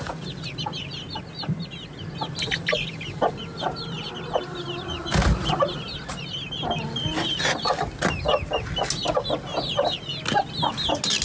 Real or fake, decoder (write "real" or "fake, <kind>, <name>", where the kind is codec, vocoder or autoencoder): real